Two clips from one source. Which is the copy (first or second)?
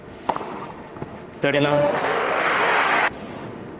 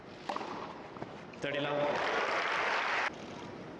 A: first